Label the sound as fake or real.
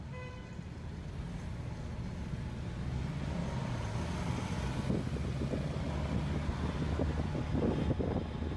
real